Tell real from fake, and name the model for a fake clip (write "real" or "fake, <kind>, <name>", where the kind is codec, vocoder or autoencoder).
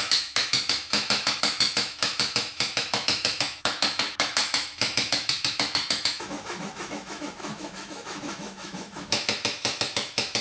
fake, autoencoder, DAC-VAE